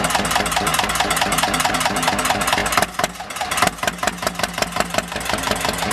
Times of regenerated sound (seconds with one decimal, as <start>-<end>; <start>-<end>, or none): none